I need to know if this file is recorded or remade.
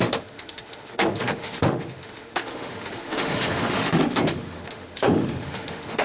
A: remade